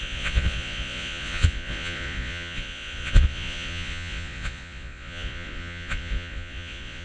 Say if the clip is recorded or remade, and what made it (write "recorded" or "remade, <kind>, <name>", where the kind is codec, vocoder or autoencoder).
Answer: remade, vocoder, Vocos